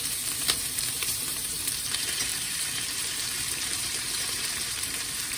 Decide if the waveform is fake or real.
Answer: fake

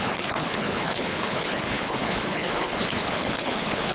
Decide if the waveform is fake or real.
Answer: fake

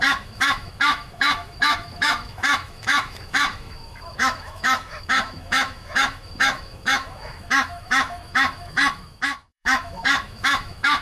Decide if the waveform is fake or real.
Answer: fake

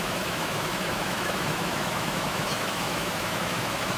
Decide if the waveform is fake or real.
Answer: fake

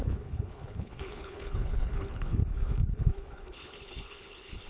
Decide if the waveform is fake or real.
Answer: fake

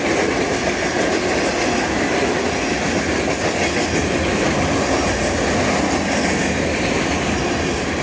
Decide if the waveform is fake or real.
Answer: real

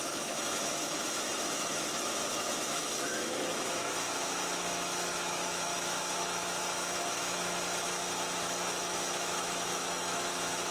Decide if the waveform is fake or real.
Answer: fake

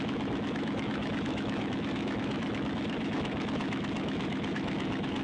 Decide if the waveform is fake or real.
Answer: fake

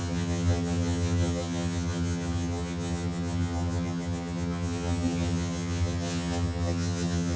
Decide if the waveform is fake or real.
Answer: fake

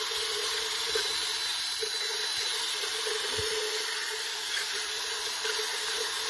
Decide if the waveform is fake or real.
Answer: fake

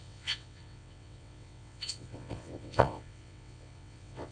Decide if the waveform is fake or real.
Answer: fake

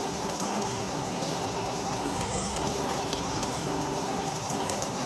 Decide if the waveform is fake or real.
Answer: fake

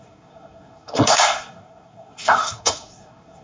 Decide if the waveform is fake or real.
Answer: fake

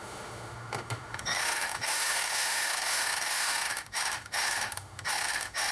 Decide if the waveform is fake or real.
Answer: fake